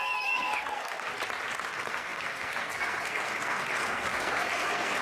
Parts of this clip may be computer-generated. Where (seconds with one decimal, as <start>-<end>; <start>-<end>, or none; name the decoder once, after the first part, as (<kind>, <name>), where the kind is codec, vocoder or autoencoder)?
0.0-1.1 (codec, SNAC); 1.7-5.0